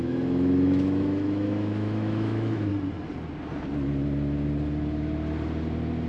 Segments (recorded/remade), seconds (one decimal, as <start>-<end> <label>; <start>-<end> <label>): 0.0-2.7 remade; 2.7-6.1 recorded